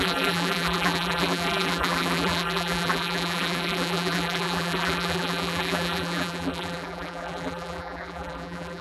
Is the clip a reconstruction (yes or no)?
yes